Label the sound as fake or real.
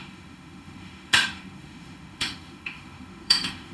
fake